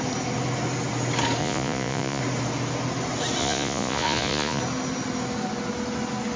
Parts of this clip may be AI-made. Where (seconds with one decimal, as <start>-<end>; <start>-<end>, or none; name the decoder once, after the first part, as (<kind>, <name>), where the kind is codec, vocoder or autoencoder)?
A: 1.4-2.2 (vocoder, Vocos); 3.4-4.6